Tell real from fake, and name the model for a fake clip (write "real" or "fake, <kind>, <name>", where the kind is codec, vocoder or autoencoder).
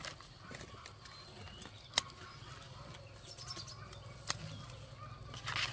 real